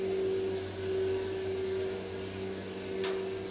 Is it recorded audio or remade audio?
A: recorded